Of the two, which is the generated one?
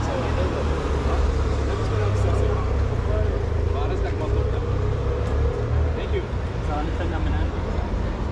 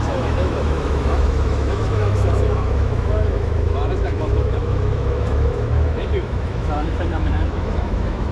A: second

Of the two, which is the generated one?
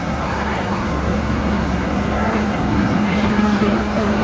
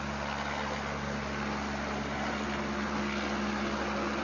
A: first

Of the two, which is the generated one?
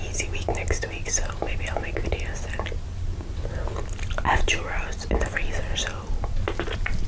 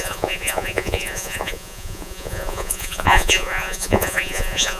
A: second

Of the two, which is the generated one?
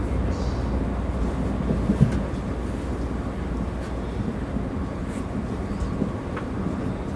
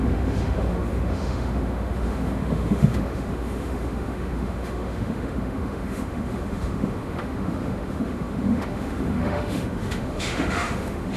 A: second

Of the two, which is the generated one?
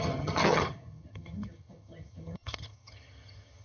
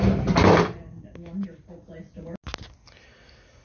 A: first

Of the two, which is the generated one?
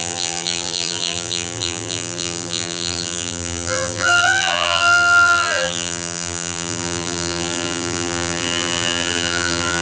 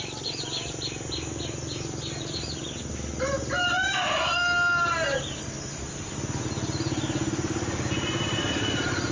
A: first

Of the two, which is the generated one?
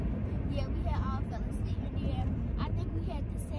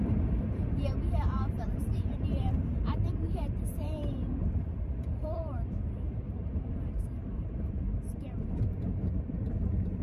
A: second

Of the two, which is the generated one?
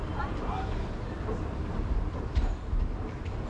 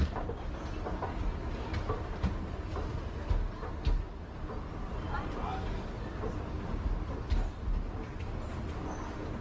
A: first